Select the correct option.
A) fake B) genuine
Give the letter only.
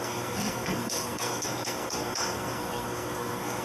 A